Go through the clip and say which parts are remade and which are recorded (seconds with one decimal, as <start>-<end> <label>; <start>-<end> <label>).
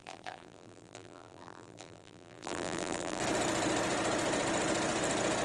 0.0-3.2 remade; 3.2-5.4 recorded